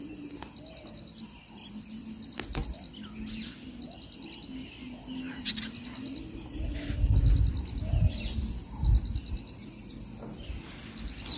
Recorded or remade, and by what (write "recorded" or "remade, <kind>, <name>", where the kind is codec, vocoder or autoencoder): recorded